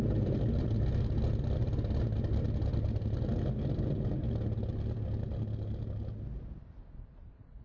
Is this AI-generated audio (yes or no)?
no